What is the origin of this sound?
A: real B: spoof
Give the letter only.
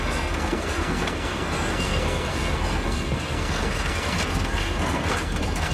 B